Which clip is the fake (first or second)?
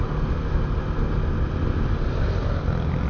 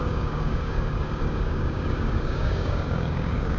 second